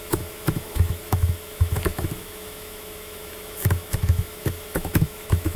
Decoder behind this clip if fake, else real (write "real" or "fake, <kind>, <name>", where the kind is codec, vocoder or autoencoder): fake, autoencoder, DAC-VAE